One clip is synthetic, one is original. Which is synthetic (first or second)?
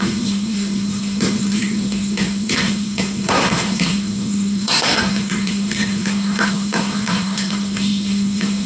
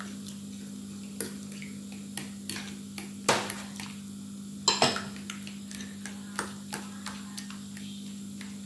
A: first